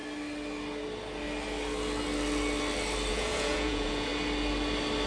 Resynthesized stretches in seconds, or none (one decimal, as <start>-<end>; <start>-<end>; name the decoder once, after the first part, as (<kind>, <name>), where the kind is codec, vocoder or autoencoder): 3.1-4.1 (vocoder, Vocos)

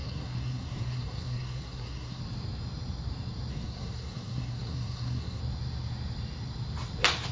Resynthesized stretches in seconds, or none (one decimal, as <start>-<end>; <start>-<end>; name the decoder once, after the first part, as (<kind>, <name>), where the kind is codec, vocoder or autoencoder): 0.0-2.2 (codec, SNAC); 3.5-5.4

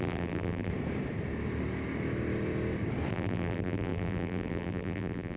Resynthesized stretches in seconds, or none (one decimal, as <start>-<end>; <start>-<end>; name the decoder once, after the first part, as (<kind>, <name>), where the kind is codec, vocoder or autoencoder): 0.0-0.7 (vocoder, BigVGAN v2); 3.1-5.4

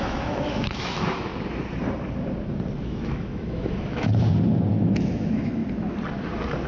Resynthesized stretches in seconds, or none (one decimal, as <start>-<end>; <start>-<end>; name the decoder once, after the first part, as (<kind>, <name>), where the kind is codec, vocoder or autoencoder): 0.0-1.3 (autoencoder, DAC-VAE); 2.8-4.1; 4.7-5.6

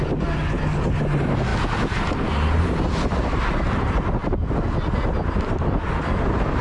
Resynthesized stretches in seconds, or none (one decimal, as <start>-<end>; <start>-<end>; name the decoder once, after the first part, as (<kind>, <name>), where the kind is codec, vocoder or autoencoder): 4.2-5.3 (vocoder, BigVGAN v2)

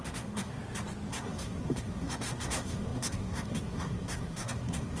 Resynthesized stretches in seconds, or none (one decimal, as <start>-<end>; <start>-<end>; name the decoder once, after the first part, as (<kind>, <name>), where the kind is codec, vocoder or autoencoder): 0.0-0.6 (codec, SNAC); 1.1-5.0